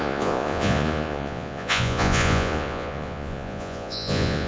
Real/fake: fake